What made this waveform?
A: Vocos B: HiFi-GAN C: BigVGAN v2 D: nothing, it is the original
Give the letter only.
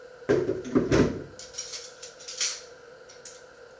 D